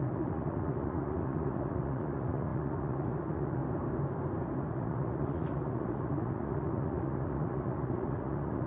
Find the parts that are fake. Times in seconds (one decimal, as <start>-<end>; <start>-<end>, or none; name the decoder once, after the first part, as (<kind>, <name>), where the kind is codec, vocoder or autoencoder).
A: 0.0-3.6 (vocoder, Vocos); 4.7-8.7